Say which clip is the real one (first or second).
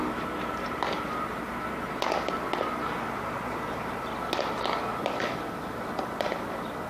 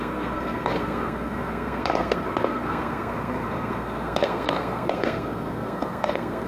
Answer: first